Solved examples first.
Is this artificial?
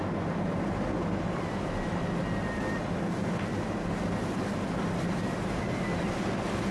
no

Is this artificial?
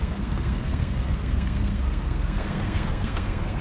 yes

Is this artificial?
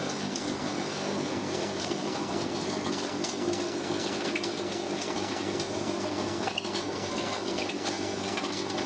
yes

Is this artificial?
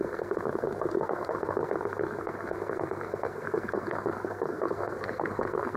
yes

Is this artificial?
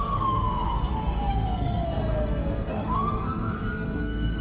yes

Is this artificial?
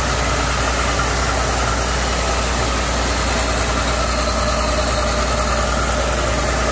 no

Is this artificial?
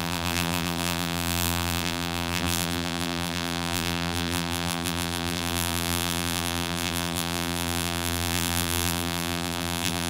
yes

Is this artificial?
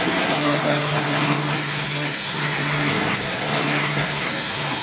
yes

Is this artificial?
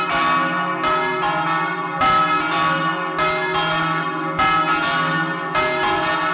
no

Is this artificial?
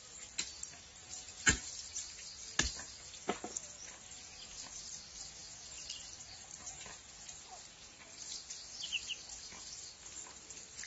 no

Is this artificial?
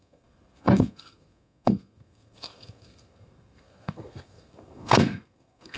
yes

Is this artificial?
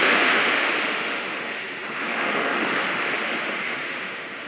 yes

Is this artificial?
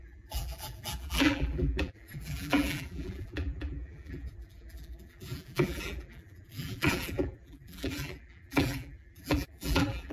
yes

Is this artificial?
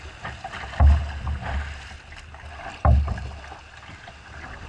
no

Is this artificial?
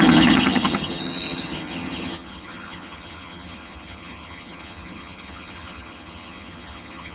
yes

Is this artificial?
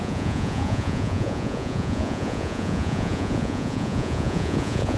yes